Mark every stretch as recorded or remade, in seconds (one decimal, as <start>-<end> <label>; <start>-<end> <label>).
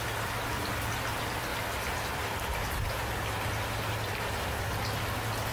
0.0-5.5 recorded